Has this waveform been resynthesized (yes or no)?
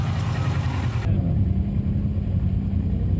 no